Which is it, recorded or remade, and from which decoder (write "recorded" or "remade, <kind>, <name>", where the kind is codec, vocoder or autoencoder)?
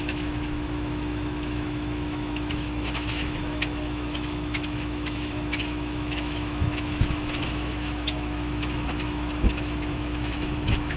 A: remade, autoencoder, DAC-VAE